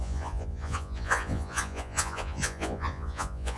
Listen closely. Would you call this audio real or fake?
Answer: fake